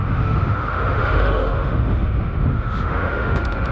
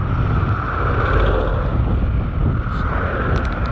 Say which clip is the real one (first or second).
second